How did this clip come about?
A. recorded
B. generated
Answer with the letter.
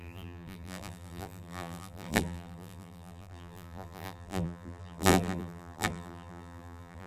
B